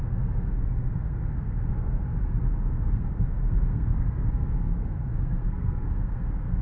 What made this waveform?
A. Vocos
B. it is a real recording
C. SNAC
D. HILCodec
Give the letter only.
C